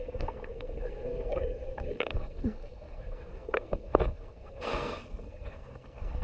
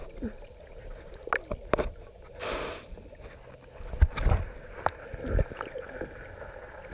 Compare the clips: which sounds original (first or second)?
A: second